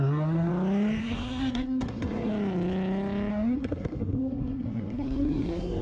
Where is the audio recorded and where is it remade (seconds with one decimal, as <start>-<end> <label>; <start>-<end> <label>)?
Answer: 0.0-0.5 remade; 0.5-1.0 recorded; 1.0-2.3 remade; 2.3-3.3 recorded; 3.3-5.8 remade